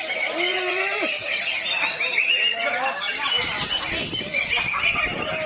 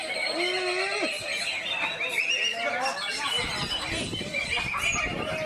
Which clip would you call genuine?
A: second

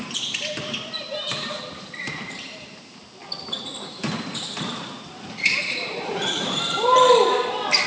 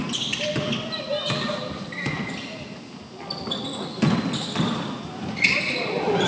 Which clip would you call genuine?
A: second